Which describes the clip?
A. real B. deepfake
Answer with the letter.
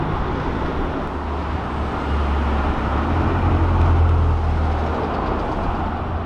A